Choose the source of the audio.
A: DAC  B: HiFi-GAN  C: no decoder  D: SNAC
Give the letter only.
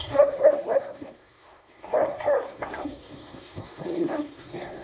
D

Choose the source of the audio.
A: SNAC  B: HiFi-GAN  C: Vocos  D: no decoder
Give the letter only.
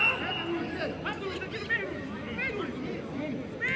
D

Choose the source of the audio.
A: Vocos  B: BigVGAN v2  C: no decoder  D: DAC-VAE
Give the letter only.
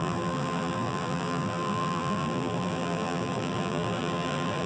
B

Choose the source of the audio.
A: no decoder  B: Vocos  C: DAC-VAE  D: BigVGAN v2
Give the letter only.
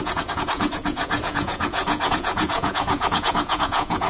B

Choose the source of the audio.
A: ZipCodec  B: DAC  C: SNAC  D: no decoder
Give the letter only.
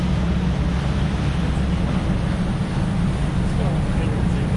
D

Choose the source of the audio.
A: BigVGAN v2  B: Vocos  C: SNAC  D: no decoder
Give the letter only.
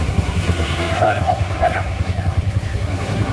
C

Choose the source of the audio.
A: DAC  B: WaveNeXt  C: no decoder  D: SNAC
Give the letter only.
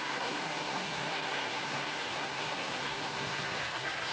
D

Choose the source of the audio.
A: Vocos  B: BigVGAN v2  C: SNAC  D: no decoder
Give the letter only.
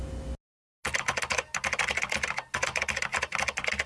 D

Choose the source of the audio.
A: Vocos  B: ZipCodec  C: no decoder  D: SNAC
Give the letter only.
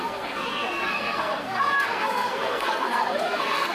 D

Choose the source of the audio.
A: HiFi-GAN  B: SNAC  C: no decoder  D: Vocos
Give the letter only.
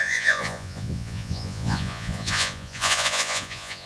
D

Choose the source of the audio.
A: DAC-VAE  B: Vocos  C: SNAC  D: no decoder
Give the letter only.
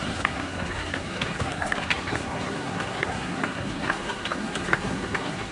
C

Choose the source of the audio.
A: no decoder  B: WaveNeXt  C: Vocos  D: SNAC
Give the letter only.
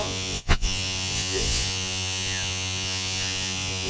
C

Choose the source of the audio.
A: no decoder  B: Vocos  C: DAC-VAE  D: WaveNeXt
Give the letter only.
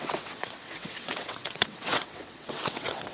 D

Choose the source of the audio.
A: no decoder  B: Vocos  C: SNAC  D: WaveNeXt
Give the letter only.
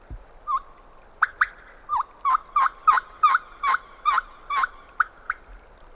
A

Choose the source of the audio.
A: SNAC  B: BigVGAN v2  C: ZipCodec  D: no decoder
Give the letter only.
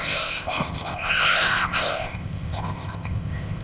C